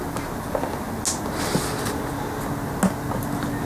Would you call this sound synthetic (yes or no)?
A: no